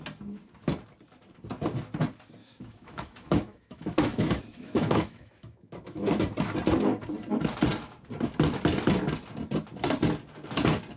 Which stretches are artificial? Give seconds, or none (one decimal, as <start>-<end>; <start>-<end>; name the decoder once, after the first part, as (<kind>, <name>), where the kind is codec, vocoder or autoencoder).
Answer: 2.4-6.2 (autoencoder, DAC-VAE)